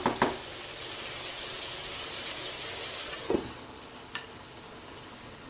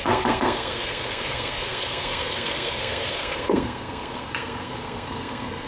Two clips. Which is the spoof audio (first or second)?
second